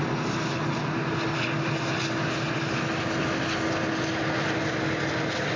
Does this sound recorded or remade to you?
recorded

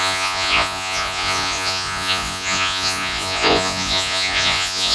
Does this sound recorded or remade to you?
remade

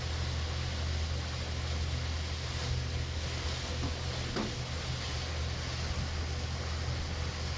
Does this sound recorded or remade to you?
recorded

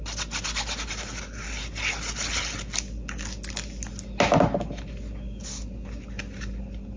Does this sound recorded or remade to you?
recorded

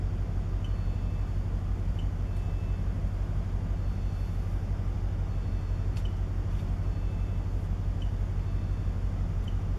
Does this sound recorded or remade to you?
recorded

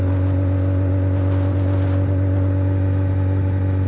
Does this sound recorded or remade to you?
recorded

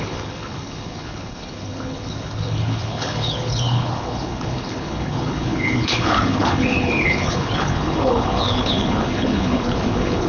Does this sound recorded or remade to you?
remade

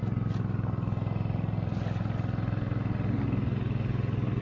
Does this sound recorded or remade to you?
recorded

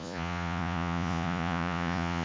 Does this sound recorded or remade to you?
remade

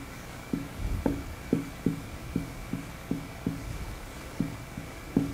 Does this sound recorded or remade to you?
remade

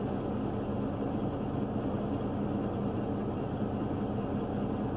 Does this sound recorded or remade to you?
recorded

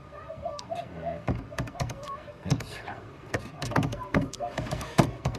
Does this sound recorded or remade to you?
remade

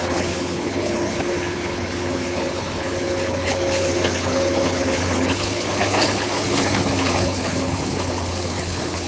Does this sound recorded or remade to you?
remade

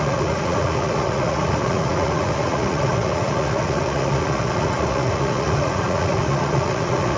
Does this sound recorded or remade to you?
remade